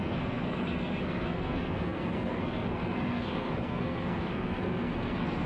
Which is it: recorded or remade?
remade